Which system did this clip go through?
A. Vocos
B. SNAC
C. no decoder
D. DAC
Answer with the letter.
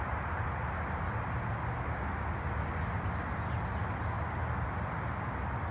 C